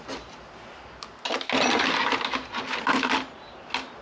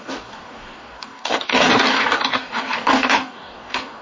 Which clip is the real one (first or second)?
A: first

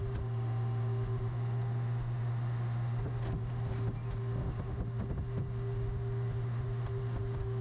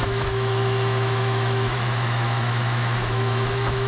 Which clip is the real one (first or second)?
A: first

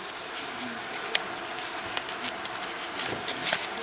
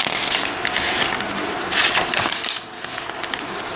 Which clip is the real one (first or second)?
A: first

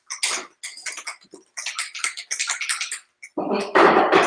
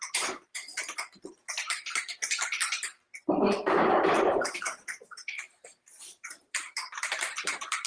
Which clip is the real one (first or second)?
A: first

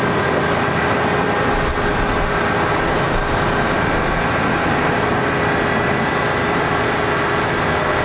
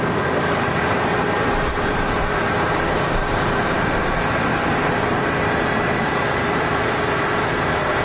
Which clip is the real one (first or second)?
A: first